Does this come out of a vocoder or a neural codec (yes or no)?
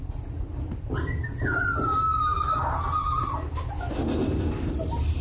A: no